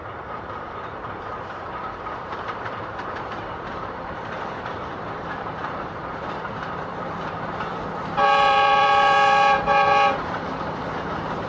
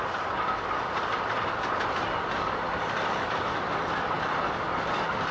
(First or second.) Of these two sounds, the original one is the second